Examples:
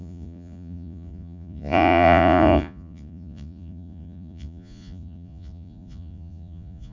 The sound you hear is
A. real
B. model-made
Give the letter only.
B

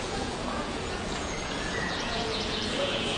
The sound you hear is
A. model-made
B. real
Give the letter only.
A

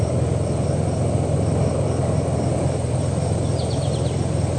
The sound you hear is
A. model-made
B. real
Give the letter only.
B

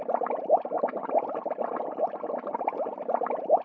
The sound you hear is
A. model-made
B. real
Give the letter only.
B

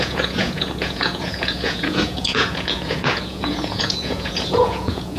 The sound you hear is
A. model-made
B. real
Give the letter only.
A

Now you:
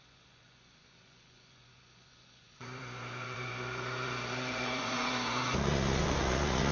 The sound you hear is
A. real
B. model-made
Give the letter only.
B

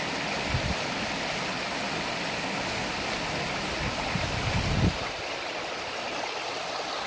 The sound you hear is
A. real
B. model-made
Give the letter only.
A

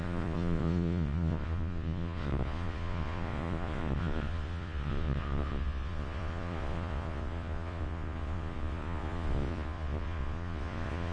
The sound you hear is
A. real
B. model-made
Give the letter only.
B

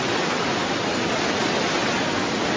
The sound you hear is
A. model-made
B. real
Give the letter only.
B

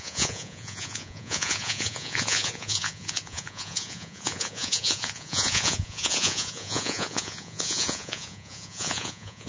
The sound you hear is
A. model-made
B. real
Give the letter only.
A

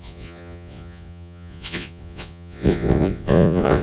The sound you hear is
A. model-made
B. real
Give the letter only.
A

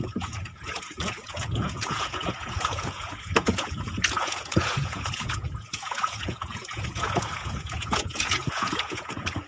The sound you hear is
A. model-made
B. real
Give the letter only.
A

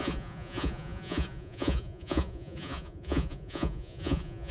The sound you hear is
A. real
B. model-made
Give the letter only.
B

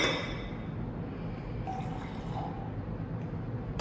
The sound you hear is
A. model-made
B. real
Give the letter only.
B